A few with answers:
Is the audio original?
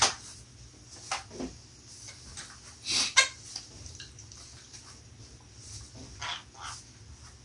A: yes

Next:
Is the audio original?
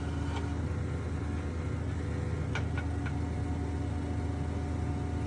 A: yes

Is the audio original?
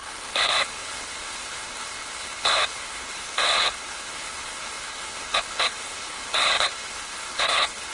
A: no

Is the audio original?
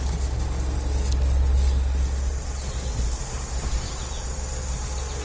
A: yes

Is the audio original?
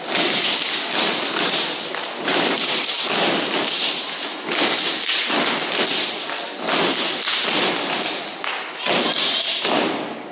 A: yes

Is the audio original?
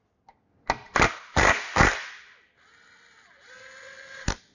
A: yes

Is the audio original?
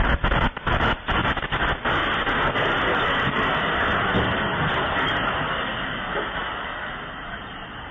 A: yes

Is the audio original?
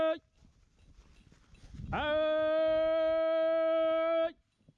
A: yes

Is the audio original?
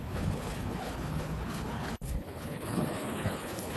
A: no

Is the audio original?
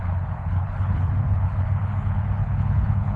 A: no